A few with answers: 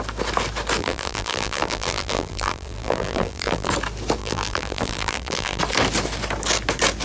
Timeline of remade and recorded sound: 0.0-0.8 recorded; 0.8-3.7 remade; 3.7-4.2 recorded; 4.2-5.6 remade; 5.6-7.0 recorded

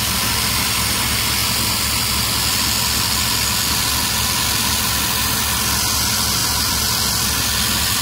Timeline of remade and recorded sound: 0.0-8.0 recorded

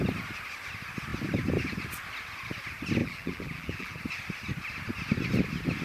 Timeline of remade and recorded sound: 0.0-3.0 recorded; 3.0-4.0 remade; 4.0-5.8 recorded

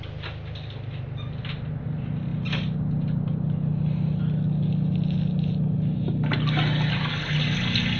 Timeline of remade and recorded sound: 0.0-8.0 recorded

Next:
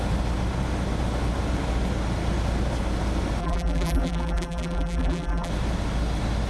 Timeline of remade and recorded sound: 0.0-3.4 recorded; 3.4-5.5 remade; 5.5-6.5 recorded

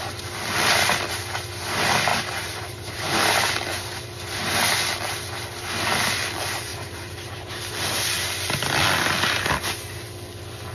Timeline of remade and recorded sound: 0.0-2.1 recorded; 2.1-3.5 remade; 3.5-6.7 recorded; 6.7-7.6 remade; 7.6-10.7 recorded